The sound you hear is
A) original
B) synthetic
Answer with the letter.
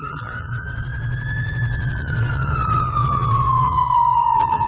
B